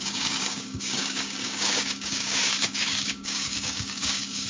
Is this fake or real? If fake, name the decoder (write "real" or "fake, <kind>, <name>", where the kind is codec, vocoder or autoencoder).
fake, codec, DAC